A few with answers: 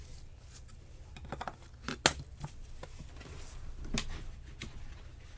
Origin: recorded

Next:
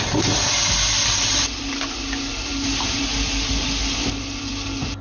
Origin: remade